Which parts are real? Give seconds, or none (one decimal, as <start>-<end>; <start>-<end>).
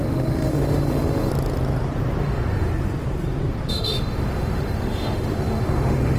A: 1.3-2.2; 2.7-3.7